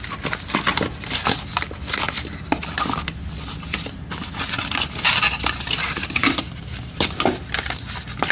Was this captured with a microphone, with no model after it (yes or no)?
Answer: yes